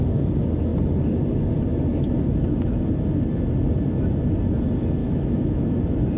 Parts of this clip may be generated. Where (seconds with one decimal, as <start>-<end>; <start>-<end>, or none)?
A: 5.0-5.8

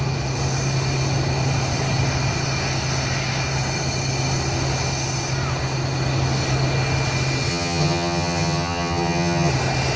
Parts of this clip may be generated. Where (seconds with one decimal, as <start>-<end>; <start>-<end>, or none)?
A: 7.5-9.5

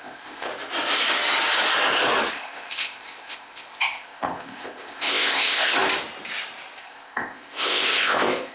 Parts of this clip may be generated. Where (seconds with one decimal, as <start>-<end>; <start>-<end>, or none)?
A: 0.0-0.5; 2.3-5.7; 6.8-8.5

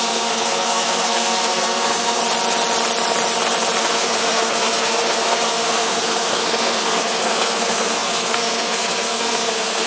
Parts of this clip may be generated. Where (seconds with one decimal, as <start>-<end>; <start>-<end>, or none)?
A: 0.0-2.2; 3.8-9.9

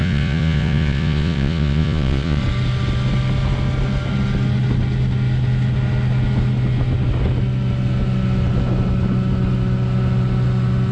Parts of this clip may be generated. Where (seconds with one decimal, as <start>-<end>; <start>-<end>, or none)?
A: 0.0-2.4

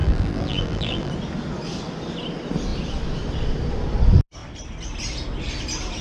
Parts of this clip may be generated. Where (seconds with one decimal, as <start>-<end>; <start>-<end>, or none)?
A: 0.0-1.1

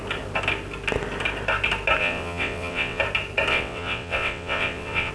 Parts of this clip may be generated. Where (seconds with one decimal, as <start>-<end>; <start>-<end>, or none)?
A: 2.0-3.0; 3.5-5.1